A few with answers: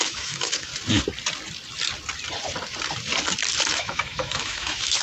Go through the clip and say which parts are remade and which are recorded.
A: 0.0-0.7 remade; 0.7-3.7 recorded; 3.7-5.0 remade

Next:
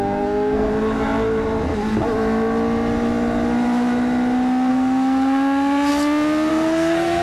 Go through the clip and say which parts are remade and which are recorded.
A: 0.0-0.7 remade; 0.7-4.7 recorded; 4.7-5.9 remade; 5.9-6.5 recorded; 6.5-7.2 remade

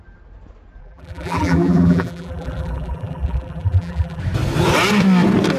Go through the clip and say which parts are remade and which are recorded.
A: 0.0-0.8 recorded; 0.8-4.2 remade; 4.2-5.6 recorded

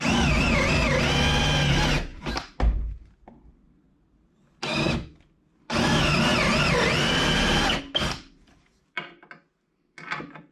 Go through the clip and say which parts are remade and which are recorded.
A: 0.0-10.5 recorded

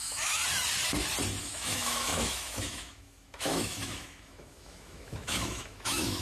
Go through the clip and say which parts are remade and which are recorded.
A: 0.0-0.4 remade; 0.4-1.4 recorded; 1.4-6.2 remade

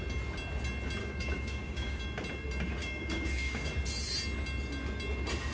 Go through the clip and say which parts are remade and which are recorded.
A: 0.0-1.0 recorded; 1.0-2.0 remade; 2.0-2.8 recorded; 2.8-3.7 remade; 3.7-5.5 recorded

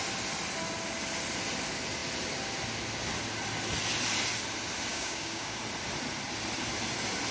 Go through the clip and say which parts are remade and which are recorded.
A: 0.0-4.9 recorded; 4.9-5.6 remade; 5.6-7.3 recorded

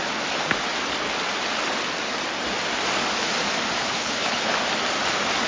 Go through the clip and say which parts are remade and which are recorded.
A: 0.0-3.9 recorded; 3.9-4.5 remade; 4.5-5.5 recorded